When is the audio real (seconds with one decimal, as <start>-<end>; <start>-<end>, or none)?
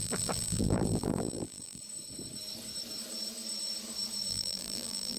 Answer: 1.8-4.3